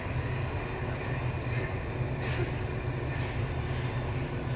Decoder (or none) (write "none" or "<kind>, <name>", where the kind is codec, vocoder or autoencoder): none